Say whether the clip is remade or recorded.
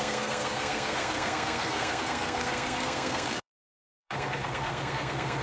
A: remade